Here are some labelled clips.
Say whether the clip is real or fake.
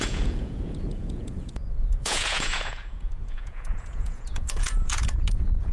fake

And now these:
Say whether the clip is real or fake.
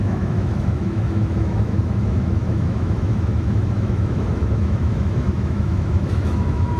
fake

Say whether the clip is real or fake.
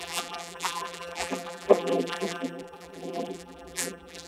fake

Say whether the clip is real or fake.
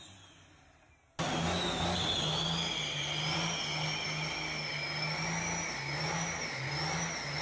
real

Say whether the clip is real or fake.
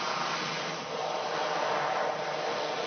real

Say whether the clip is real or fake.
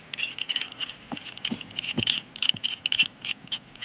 real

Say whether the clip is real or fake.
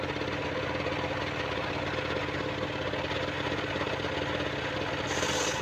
real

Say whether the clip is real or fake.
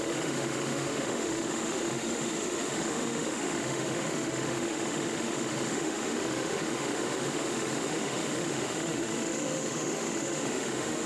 fake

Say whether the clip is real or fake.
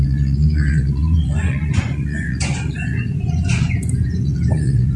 fake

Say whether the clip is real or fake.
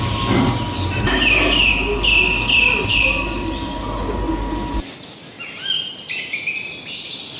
real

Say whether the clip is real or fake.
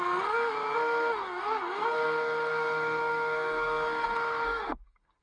fake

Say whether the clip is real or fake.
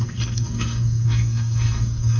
fake